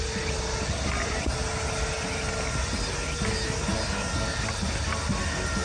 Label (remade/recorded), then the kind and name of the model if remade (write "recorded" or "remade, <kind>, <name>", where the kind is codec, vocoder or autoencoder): recorded